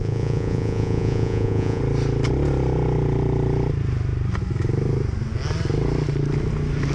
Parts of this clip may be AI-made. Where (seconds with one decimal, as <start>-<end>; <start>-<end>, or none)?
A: 0.0-1.8